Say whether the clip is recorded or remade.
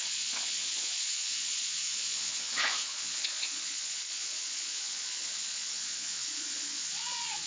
remade